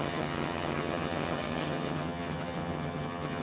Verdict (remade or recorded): remade